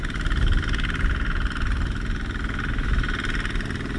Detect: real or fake real